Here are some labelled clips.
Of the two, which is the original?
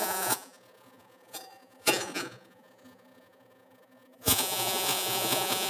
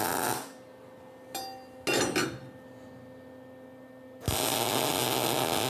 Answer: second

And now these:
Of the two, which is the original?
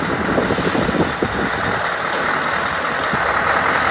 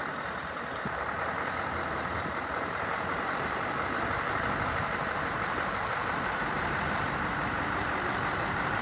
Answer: first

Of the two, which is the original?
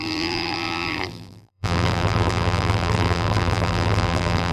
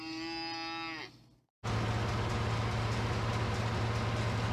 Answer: second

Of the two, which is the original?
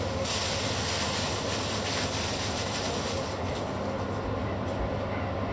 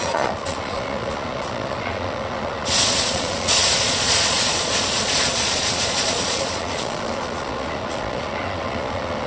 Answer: first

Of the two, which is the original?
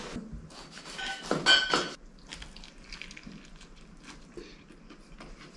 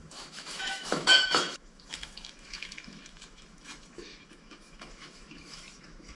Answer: first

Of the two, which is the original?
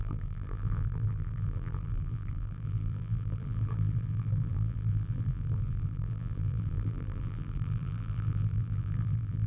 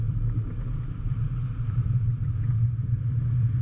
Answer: second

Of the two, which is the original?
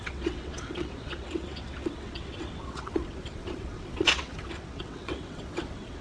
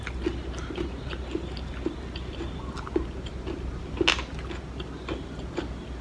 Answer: second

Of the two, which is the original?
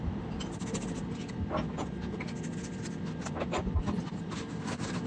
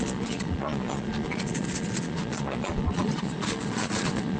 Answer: first